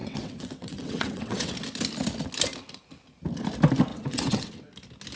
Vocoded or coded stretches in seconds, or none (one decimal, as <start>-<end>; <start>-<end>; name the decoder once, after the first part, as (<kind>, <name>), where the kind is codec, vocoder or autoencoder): 0.0-1.5 (vocoder, WaveNeXt); 3.9-4.5